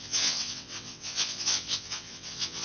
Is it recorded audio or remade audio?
remade